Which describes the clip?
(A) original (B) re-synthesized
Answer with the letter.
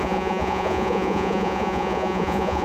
B